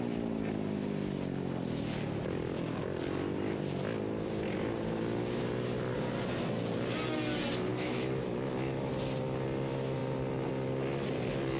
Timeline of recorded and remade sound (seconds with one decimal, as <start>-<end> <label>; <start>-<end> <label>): 0.0-7.7 recorded; 7.7-8.9 remade; 8.9-11.6 recorded